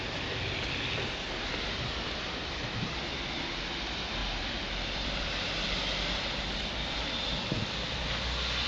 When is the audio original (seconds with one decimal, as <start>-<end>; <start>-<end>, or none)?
0.0-4.2; 5.3-8.7